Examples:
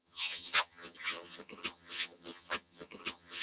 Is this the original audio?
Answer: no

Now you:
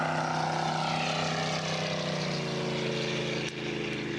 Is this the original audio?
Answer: yes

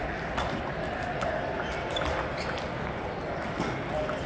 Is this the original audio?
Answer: yes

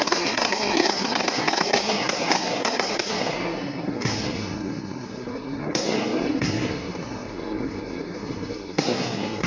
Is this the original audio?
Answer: no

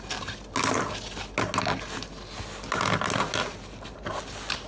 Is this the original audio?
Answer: yes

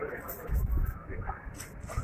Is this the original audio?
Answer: yes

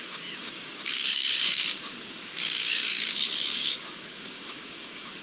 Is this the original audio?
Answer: no